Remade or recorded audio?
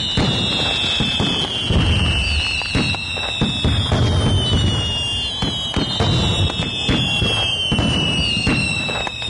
recorded